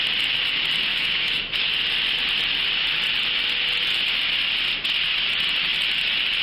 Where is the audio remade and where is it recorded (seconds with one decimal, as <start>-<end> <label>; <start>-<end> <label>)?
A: 0.0-0.9 recorded; 0.9-1.7 remade; 1.7-6.4 recorded